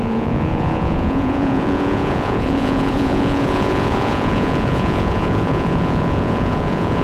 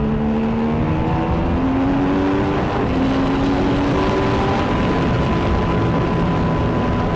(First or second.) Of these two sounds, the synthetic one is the first